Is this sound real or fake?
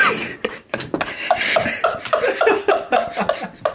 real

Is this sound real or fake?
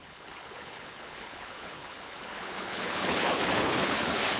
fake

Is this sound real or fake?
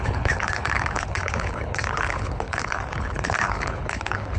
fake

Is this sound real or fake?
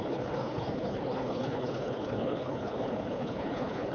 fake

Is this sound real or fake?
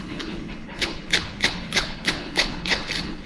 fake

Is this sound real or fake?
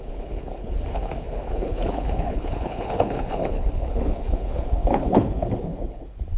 fake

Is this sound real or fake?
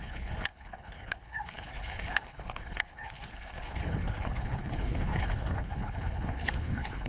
fake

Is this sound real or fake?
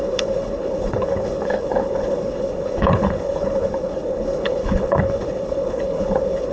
fake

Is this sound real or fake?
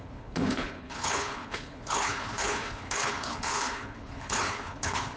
fake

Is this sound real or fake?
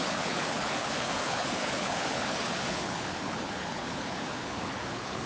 fake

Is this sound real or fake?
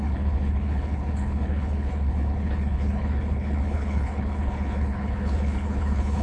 fake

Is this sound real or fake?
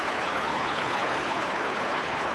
fake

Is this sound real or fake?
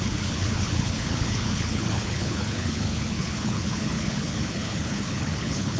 fake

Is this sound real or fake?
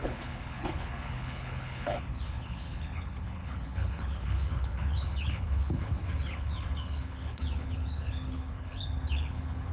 fake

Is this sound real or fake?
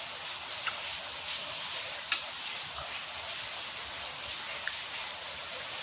real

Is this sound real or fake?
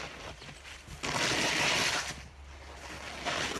real